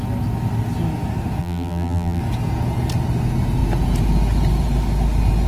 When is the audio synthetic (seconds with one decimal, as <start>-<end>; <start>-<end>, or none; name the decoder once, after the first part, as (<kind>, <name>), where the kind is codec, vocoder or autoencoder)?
1.4-2.2 (vocoder, BigVGAN v2)